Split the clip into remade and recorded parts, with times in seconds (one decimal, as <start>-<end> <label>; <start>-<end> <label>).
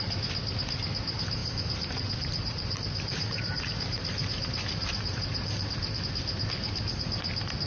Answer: 0.0-1.4 recorded; 1.4-6.0 remade; 6.0-7.7 recorded